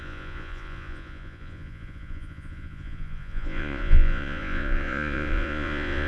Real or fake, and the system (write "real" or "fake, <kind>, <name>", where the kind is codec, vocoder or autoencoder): fake, vocoder, Vocos